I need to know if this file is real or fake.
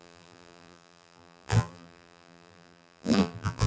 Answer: fake